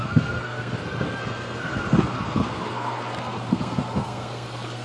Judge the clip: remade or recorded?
remade